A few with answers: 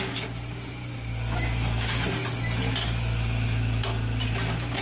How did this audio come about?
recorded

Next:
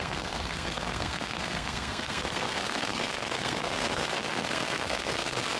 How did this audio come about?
remade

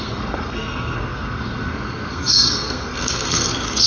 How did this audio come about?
remade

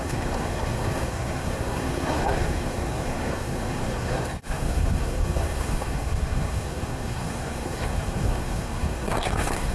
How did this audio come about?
remade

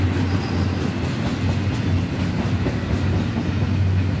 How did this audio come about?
recorded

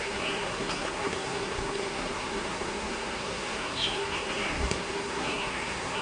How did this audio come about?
remade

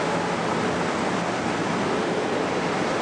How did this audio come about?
recorded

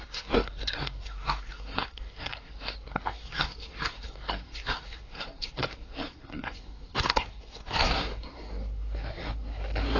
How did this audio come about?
remade